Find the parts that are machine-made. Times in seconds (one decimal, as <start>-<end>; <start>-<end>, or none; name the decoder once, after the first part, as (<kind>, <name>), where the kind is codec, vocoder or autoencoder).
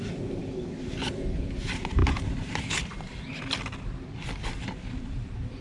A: none